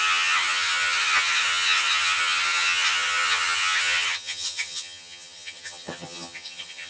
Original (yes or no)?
no